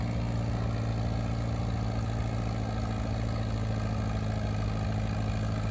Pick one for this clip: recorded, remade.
recorded